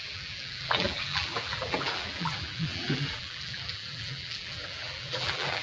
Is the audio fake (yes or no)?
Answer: yes